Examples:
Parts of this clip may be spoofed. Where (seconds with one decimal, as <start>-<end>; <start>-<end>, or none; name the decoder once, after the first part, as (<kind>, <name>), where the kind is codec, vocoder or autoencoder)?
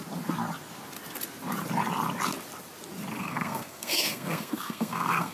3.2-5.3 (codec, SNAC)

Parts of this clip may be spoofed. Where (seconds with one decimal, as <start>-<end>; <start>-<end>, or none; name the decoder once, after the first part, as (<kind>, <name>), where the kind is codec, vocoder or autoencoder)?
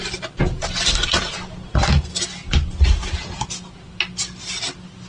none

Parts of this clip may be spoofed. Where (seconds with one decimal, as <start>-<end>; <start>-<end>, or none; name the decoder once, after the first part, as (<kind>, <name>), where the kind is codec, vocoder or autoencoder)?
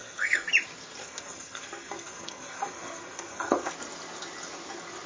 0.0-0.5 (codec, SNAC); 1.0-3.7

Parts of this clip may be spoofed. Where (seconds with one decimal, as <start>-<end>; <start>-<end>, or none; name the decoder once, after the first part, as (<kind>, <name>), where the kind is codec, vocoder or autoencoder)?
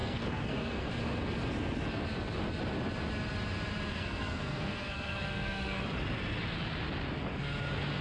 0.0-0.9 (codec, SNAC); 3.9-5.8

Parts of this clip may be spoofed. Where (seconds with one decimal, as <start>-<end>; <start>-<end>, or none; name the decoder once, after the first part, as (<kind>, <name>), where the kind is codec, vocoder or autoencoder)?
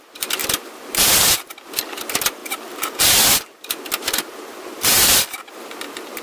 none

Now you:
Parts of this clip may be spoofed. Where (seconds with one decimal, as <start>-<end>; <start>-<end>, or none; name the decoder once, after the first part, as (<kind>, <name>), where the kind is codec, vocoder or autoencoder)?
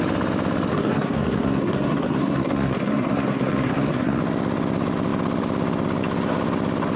0.7-4.2 (codec, SNAC)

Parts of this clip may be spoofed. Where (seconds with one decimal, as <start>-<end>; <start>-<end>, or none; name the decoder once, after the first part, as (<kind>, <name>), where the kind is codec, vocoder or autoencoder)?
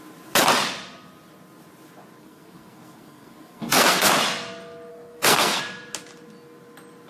2.2-4.1 (codec, SNAC); 4.9-5.6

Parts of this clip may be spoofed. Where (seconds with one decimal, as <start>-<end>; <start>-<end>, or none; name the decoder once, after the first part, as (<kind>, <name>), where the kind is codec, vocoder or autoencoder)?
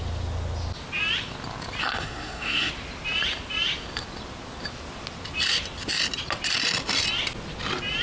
1.8-2.7 (codec, SNAC)